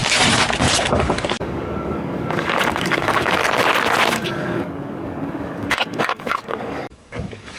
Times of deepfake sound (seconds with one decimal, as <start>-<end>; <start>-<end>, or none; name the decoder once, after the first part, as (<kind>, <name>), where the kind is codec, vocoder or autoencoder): 0.6-3.4 (codec, DAC); 4.1-7.6